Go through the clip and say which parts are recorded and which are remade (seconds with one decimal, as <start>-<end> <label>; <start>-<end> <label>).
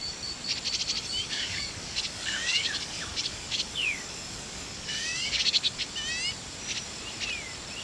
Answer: 0.0-1.2 recorded; 1.2-5.9 remade; 5.9-7.8 recorded